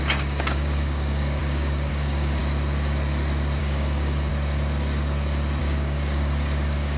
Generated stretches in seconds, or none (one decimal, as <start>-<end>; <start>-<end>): 0.0-2.4; 3.6-4.3; 5.6-7.0